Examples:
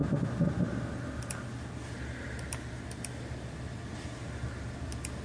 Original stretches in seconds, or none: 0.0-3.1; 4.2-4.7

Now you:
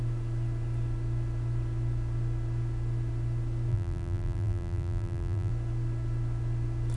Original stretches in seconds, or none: 0.0-3.7; 5.5-7.0

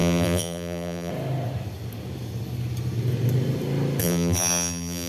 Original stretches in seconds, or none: 1.1-4.0

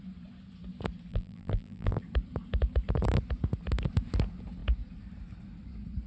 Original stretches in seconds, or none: 0.0-1.1; 2.0-6.1